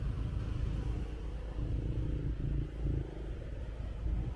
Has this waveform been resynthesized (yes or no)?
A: no